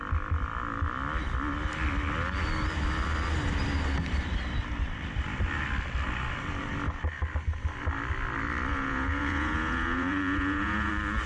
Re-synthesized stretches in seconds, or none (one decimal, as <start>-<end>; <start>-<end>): 8.7-10.9